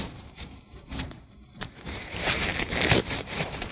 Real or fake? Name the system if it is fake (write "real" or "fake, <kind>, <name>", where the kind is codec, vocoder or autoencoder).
fake, vocoder, BigVGAN v2